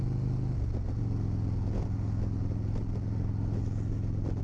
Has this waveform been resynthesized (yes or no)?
no